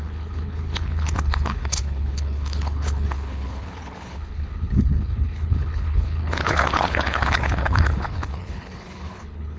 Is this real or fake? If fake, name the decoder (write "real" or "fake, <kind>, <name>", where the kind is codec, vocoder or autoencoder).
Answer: fake, codec, HILCodec